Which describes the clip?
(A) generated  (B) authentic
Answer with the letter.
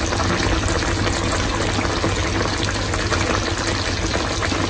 B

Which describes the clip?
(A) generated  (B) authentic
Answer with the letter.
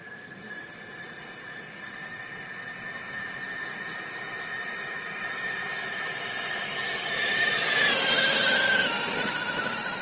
B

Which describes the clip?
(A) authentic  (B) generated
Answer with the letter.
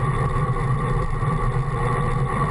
B